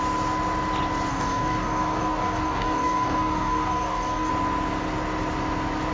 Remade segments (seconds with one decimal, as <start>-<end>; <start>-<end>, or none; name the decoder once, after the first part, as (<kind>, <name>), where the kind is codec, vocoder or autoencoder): 1.1-4.3 (codec, DAC)